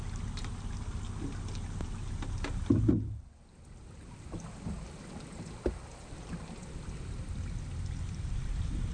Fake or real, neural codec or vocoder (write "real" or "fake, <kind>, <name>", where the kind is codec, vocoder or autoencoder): real